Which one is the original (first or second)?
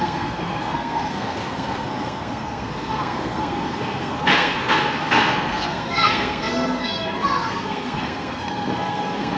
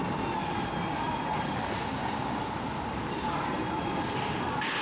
second